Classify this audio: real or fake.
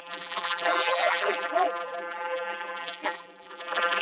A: fake